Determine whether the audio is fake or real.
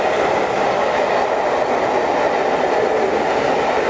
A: real